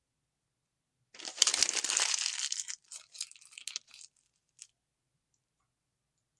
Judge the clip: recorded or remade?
recorded